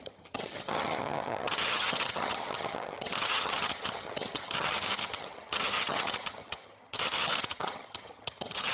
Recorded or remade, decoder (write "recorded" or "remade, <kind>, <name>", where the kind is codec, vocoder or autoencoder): remade, vocoder, HiFi-GAN